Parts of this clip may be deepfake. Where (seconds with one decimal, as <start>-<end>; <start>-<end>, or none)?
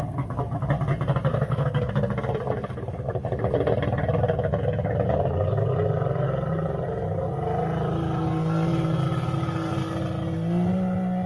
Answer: 1.3-1.9